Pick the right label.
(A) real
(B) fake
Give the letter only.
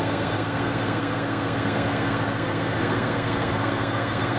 B